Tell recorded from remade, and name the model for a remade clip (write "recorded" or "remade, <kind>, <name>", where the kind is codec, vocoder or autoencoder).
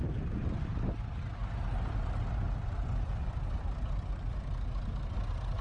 recorded